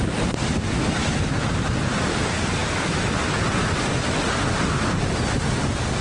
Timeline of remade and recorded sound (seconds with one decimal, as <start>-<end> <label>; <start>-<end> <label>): 0.0-6.0 recorded